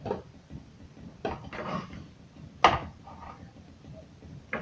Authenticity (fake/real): real